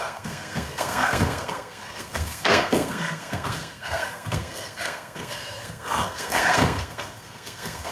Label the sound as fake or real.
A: fake